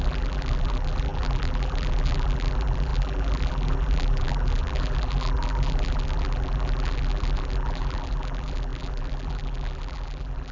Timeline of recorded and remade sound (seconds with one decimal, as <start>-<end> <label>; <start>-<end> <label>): 0.0-10.5 remade